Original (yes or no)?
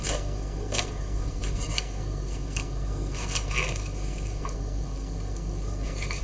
no